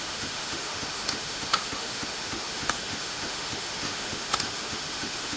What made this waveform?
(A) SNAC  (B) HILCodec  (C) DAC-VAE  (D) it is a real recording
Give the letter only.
C